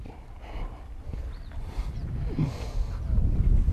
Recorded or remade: recorded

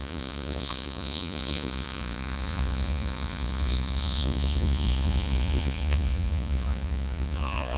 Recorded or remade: remade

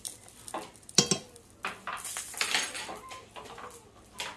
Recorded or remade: recorded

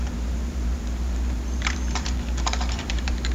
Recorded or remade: remade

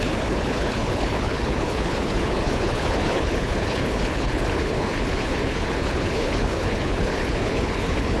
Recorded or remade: remade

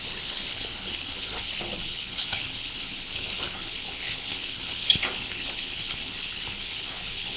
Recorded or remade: remade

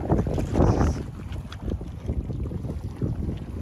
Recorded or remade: recorded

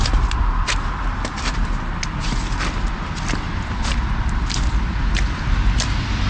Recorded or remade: recorded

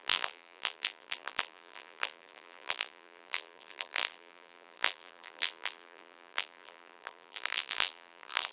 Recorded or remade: remade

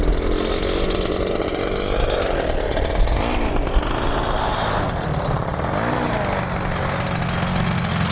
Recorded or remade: recorded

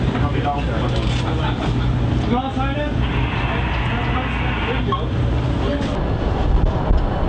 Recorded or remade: recorded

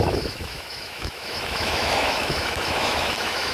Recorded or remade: remade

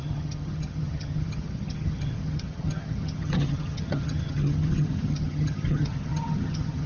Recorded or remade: remade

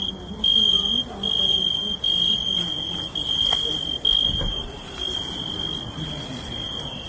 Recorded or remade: recorded